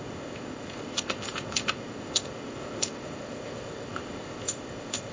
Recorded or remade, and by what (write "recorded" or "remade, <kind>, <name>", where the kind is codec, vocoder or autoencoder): remade, codec, ZipCodec